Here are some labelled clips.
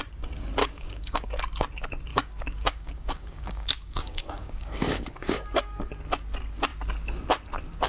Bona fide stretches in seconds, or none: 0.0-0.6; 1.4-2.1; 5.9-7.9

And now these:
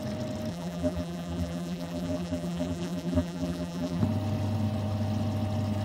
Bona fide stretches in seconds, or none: 0.0-0.5; 4.0-5.8

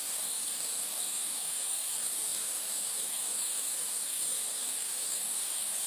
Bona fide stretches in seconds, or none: none

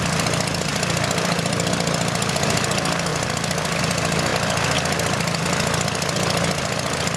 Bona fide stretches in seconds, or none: 0.0-0.7; 1.7-3.1; 3.8-7.2

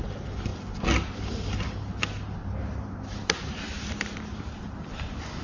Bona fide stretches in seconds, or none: 0.0-2.4; 4.7-5.4

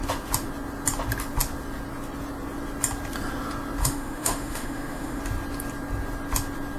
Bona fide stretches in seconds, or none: 0.0-3.8; 5.2-6.8